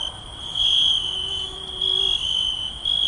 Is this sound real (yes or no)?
yes